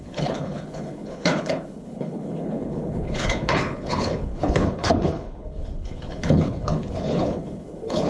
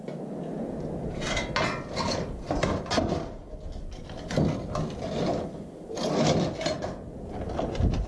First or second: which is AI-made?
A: first